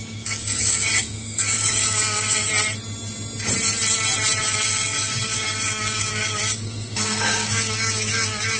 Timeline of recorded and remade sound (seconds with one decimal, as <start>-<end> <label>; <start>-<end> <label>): 0.0-2.5 remade; 2.5-4.4 recorded; 4.4-8.6 remade